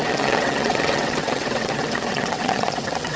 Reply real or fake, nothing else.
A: fake